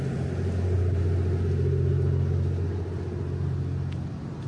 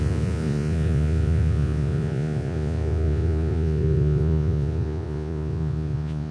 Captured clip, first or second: first